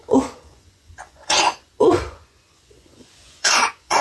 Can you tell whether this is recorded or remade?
remade